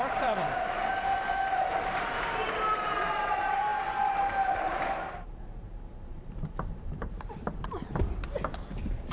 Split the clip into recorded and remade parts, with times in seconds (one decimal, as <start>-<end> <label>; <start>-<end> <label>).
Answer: 0.0-9.1 remade